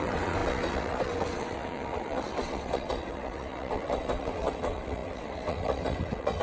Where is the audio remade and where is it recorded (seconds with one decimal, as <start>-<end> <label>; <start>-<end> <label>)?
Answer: 0.0-6.4 remade